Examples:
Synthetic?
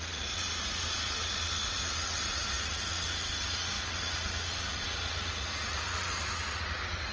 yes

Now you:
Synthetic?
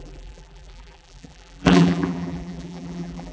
yes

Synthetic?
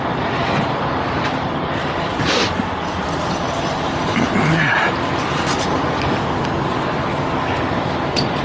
no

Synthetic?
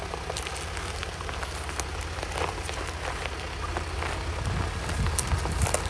no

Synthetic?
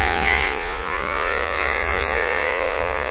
yes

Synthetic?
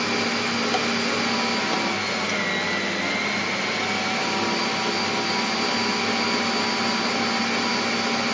no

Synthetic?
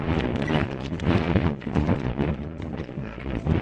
yes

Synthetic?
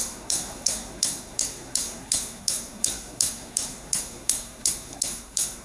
yes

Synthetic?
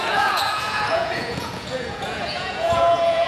yes